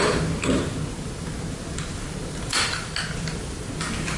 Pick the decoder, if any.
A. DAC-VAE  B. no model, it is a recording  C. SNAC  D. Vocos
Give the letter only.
B